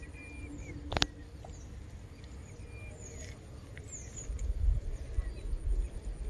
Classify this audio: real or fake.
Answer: real